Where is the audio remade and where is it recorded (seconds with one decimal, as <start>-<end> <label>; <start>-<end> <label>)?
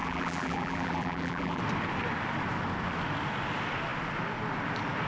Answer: 0.0-1.6 remade; 1.6-5.1 recorded